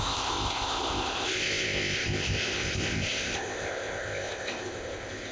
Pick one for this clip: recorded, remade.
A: remade